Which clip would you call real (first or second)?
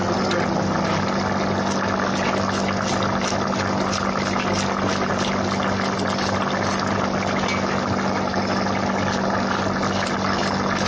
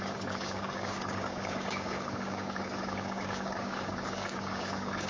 first